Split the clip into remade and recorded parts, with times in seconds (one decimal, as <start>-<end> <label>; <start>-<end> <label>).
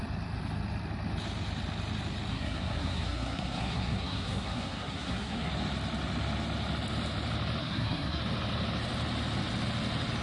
0.0-2.3 recorded; 2.3-5.5 remade; 5.5-7.6 recorded; 7.6-8.2 remade; 8.2-10.2 recorded